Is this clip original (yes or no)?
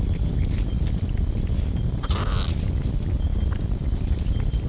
yes